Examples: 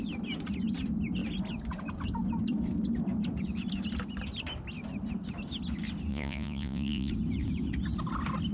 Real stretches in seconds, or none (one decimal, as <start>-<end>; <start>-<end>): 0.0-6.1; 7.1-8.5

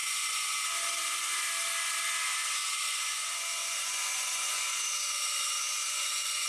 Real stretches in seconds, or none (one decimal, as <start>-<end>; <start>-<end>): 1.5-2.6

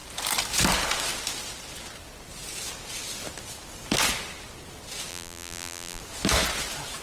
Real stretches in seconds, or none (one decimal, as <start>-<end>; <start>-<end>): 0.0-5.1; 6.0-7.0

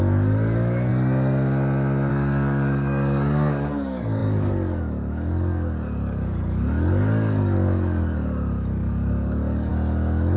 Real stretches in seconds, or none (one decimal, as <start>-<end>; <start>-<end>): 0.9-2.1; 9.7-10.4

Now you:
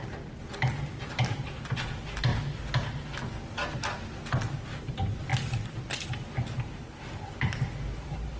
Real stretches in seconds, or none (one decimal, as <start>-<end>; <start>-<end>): 0.0-8.4